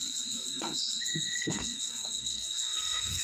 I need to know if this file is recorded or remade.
remade